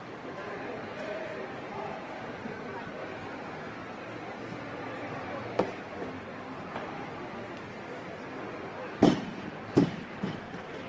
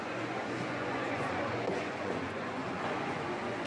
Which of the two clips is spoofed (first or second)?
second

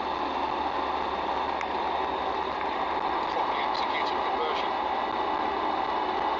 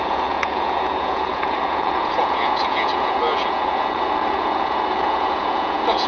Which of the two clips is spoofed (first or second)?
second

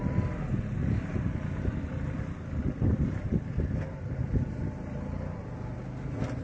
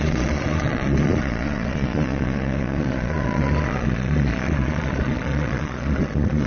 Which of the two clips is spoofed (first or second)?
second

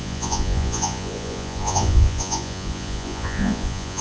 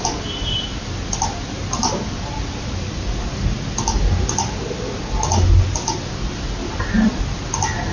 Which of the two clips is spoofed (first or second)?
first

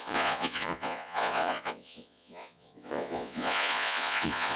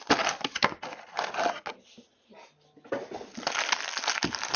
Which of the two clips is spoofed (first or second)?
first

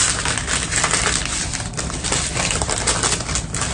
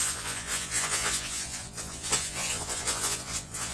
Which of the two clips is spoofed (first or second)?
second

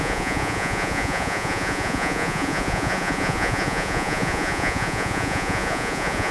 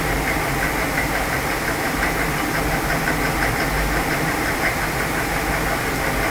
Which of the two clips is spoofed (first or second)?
first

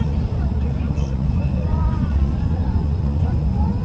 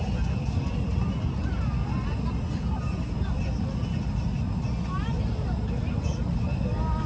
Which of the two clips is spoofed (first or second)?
first